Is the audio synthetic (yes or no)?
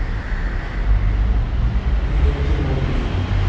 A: no